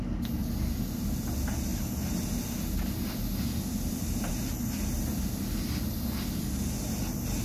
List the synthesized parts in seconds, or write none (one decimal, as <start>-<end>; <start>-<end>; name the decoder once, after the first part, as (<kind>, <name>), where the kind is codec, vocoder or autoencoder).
none

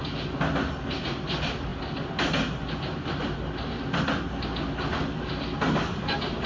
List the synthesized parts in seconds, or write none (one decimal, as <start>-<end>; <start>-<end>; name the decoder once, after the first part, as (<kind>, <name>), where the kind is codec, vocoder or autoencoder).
none